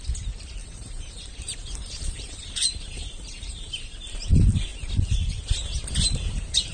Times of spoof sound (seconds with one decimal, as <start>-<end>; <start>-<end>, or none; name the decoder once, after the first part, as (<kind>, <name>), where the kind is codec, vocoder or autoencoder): 0.6-3.9 (vocoder, BigVGAN v2)